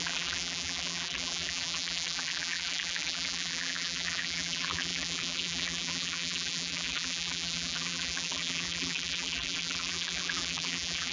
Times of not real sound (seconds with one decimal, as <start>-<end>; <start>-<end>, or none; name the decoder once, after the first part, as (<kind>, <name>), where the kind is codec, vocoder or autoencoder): 0.0-11.1 (vocoder, BigVGAN v2)